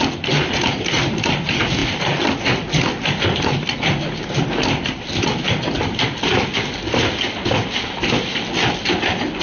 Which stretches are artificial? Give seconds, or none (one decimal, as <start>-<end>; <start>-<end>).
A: none